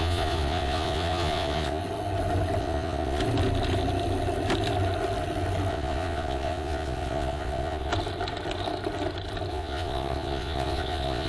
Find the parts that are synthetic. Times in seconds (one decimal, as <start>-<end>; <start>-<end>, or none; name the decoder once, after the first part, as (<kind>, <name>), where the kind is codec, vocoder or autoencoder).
0.0-1.8 (vocoder, Vocos); 2.6-3.2; 5.7-7.9; 9.5-11.3